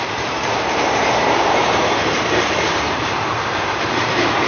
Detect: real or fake fake